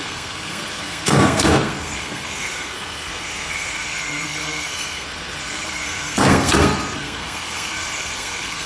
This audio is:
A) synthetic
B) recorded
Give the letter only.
A